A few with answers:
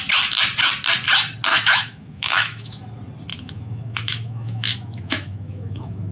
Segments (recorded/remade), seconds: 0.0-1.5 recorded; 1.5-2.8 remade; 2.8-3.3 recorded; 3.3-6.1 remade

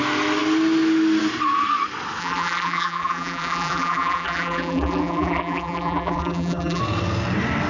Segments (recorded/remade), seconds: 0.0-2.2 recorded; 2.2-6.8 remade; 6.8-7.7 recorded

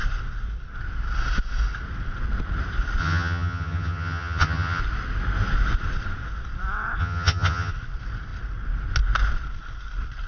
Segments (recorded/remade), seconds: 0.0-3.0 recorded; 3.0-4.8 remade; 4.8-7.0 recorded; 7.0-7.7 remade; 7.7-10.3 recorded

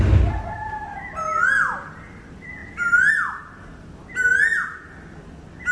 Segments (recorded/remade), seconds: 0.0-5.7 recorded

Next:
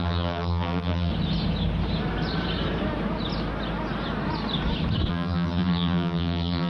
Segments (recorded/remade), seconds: 0.0-1.1 remade; 1.1-5.1 recorded; 5.1-6.7 remade